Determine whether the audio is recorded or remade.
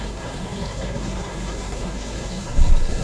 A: remade